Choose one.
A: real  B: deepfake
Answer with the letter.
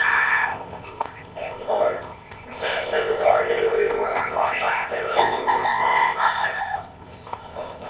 B